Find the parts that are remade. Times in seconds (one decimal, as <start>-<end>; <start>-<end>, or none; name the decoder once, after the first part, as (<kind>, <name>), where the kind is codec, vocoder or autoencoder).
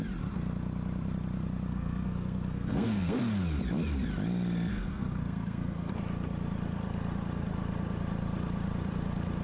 1.7-3.2 (codec, SNAC); 4.7-5.9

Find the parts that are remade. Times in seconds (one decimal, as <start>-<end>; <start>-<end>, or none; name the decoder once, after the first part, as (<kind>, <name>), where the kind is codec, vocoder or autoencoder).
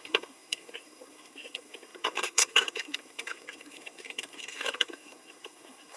0.0-6.0 (codec, SNAC)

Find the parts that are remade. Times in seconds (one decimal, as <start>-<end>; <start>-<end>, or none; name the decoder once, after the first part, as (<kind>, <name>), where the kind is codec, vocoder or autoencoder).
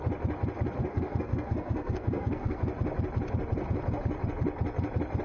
0.8-2.6 (codec, SNAC)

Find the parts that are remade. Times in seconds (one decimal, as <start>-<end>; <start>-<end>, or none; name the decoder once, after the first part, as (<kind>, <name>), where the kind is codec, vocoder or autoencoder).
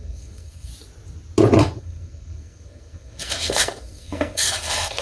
0.0-0.7 (codec, SNAC); 1.8-5.0